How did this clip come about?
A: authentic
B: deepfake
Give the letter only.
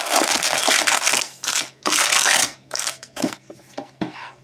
B